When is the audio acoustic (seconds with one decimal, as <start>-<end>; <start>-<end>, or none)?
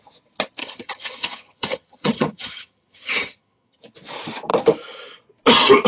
0.0-0.6; 3.8-5.9